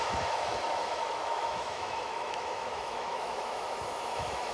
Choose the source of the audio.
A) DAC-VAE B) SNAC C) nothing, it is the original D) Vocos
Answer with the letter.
A